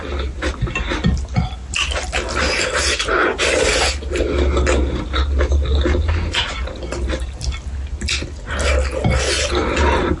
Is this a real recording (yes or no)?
yes